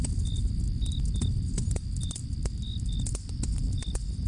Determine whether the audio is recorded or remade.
recorded